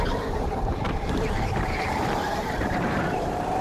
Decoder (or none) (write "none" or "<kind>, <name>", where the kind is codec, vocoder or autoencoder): vocoder, BigVGAN v2